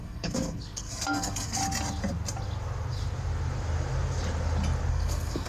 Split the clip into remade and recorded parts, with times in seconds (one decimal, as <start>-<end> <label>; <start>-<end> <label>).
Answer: 0.0-1.6 remade; 1.6-4.9 recorded; 4.9-5.5 remade